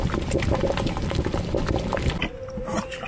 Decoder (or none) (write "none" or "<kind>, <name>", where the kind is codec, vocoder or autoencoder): vocoder, BigVGAN v2